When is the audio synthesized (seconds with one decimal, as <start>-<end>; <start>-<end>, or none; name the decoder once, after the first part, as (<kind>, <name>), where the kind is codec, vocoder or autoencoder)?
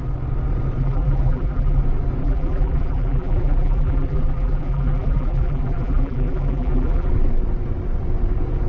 0.8-1.8 (vocoder, BigVGAN v2); 2.2-7.1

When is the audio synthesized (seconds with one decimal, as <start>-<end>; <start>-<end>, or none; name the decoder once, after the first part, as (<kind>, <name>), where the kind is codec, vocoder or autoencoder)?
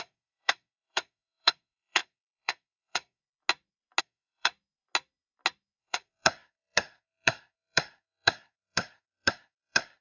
0.0-3.2 (codec, SNAC); 4.0-4.5; 5.8-10.0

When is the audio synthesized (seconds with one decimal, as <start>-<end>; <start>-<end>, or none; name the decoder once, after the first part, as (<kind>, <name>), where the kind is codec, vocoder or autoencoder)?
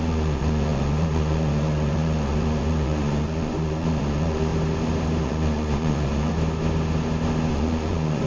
0.0-4.5 (vocoder, Vocos); 5.2-6.3; 7.5-8.3